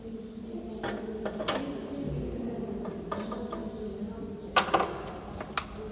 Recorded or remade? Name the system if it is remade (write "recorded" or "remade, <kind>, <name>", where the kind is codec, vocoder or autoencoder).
recorded